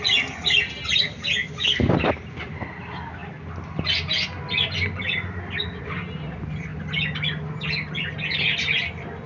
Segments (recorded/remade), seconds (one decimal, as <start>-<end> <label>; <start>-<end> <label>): 0.0-9.3 recorded